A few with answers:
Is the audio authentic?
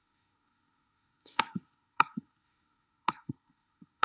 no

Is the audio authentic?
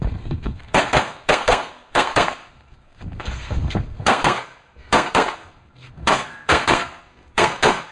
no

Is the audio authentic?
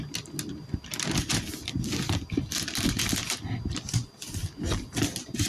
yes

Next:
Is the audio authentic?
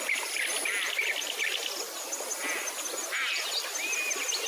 yes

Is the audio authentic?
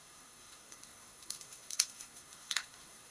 no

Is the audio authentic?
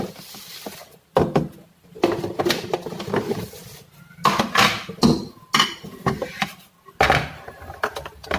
yes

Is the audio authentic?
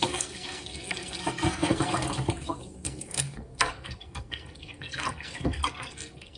no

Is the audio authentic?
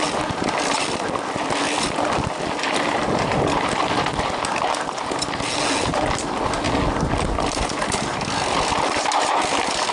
yes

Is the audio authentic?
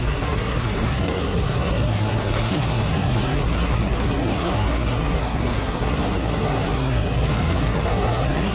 no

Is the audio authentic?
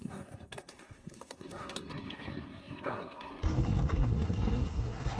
no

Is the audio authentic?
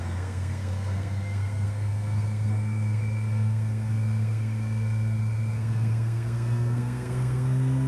no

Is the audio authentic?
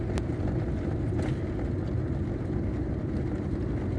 yes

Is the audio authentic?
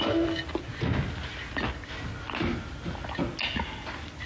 yes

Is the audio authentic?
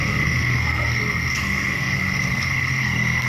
no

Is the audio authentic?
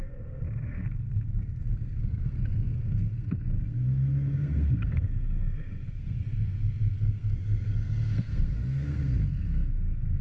no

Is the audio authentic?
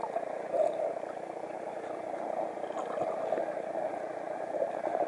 yes